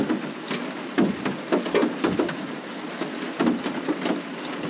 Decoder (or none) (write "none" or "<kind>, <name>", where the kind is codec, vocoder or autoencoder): none